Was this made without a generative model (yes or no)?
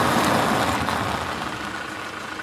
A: yes